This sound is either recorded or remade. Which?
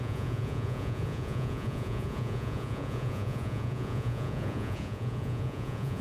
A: remade